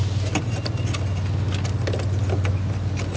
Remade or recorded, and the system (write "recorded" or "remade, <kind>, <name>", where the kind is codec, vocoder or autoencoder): recorded